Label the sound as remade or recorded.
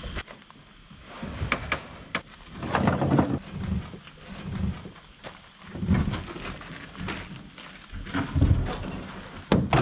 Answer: recorded